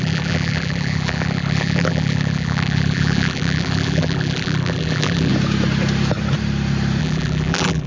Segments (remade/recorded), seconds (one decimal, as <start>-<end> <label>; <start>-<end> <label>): 0.0-5.3 remade; 5.3-7.0 recorded; 7.0-7.9 remade